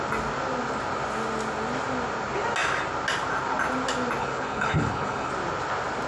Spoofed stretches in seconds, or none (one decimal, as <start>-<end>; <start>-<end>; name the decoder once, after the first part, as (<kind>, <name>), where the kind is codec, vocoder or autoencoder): 4.2-5.3 (codec, HILCodec)